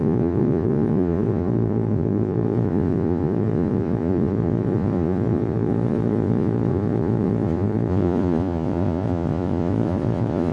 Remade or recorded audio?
remade